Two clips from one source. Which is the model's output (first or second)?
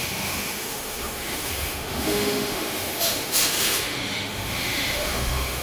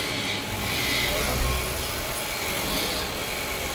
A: first